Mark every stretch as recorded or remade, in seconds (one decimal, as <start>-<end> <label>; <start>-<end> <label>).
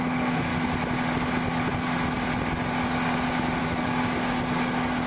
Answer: 0.0-0.5 remade; 0.5-3.6 recorded; 3.6-5.1 remade